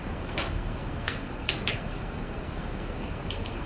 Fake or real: fake